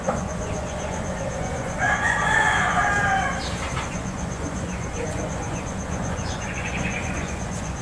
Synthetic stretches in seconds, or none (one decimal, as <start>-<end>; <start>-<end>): 0.0-2.8; 3.9-7.8